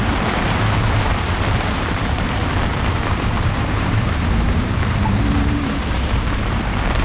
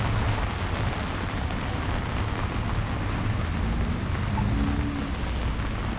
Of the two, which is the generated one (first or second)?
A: first